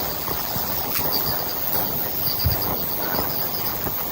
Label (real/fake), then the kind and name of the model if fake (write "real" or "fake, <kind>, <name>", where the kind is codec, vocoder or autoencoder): fake, vocoder, BigVGAN v2